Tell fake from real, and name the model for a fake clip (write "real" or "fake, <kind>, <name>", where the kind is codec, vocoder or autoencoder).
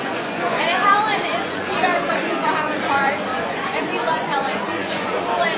fake, vocoder, Vocos